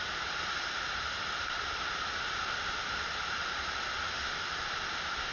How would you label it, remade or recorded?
recorded